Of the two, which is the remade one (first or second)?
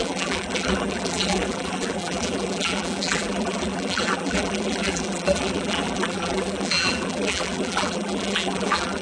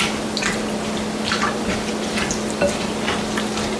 first